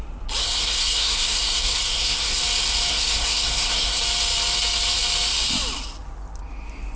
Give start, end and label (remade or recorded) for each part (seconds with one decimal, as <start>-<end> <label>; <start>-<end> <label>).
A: 0.0-0.4 recorded; 0.4-2.4 remade; 2.4-2.9 recorded; 2.9-4.0 remade; 4.0-7.0 recorded